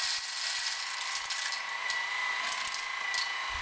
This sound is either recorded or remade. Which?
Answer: recorded